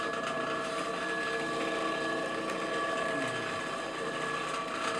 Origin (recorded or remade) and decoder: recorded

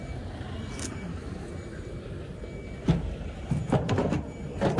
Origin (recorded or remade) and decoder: recorded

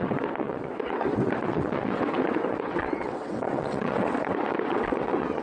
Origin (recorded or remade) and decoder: remade, vocoder, WaveNeXt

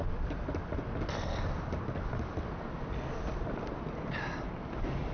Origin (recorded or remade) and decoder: recorded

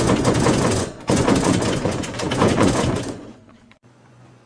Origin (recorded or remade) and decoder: remade, vocoder, Vocos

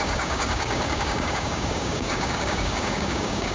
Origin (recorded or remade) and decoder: remade, codec, DAC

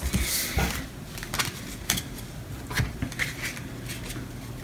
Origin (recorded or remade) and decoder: recorded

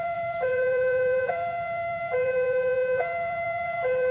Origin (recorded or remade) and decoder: remade, vocoder, BigVGAN v2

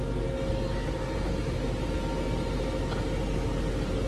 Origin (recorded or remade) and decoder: recorded